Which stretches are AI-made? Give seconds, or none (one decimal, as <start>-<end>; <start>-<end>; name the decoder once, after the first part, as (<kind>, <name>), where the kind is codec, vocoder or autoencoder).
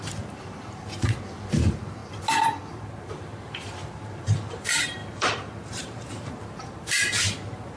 0.0-2.0 (vocoder, BigVGAN v2); 2.7-7.8